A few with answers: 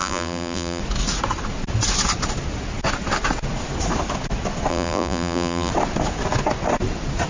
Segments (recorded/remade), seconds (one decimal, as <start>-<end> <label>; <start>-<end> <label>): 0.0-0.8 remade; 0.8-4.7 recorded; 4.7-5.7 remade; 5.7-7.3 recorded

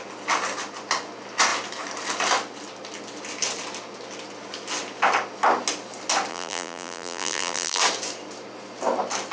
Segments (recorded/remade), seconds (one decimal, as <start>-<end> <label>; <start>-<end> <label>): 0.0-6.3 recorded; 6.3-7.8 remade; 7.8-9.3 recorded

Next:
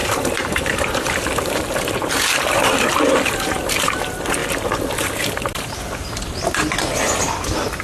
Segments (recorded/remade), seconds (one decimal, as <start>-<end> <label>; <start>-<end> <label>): 0.0-4.0 remade; 4.0-4.4 recorded; 4.4-6.1 remade; 6.1-7.8 recorded

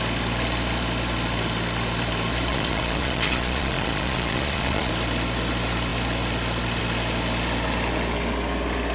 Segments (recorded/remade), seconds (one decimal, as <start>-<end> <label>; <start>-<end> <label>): 0.0-2.5 recorded; 2.5-4.9 remade; 4.9-8.9 recorded

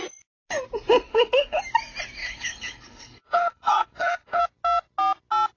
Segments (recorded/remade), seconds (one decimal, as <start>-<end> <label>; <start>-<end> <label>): 0.0-1.1 recorded; 1.1-1.6 remade; 1.6-2.2 recorded; 2.2-4.4 remade; 4.4-5.6 recorded

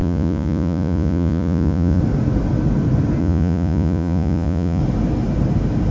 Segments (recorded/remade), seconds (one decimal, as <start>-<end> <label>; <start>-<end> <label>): 0.0-2.0 remade; 2.0-3.2 recorded; 3.2-4.8 remade; 4.8-5.9 recorded